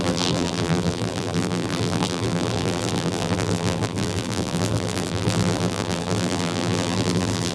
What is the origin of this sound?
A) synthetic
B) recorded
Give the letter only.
A